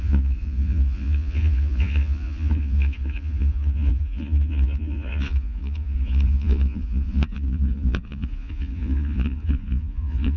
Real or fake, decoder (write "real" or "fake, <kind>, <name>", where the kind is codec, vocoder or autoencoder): fake, vocoder, Vocos